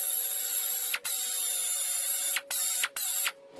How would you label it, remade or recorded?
remade